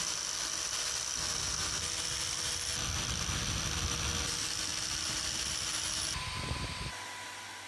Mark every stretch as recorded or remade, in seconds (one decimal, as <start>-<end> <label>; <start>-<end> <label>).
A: 0.0-7.7 recorded